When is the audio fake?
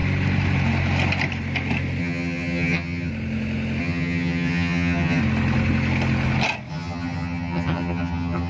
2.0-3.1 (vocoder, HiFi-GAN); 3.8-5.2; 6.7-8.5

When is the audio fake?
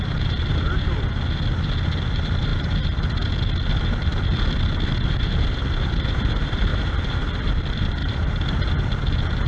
2.5-3.3 (vocoder, BigVGAN v2); 8.0-8.6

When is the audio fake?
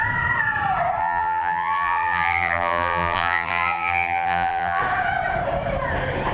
1.0-4.8 (vocoder, BigVGAN v2)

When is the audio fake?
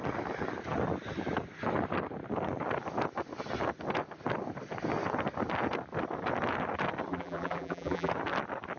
7.1-8.1 (vocoder, BigVGAN v2)